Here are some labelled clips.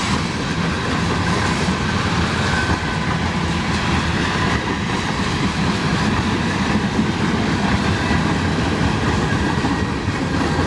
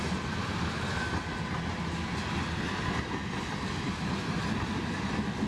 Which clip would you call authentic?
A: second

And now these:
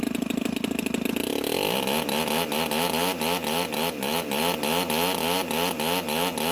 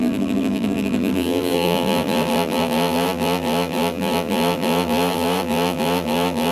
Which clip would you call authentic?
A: first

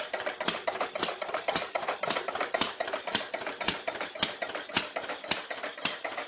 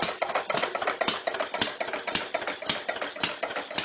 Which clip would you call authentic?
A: second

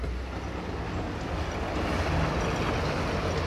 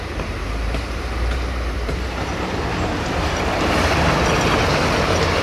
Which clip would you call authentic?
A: first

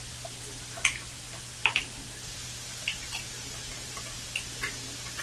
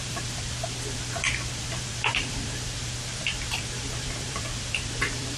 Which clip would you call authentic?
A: first